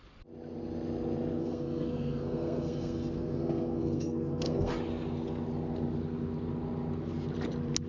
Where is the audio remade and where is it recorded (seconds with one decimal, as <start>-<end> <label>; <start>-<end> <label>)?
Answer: 0.0-1.4 recorded; 1.4-4.7 remade; 4.7-7.9 recorded